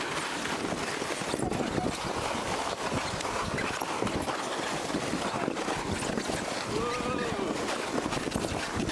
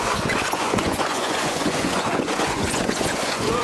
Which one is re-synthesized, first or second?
second